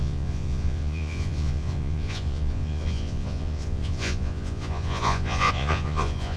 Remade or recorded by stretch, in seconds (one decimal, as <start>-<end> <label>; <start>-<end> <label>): 0.0-6.4 remade